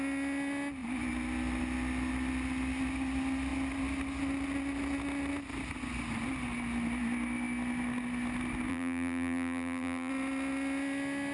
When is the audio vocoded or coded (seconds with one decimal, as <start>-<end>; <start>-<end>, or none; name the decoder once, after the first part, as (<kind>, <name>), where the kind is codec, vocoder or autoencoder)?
8.7-10.1 (vocoder, BigVGAN v2)